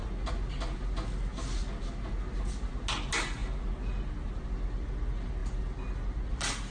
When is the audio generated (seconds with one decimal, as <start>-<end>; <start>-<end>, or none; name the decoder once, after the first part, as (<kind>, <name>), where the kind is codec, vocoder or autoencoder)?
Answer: none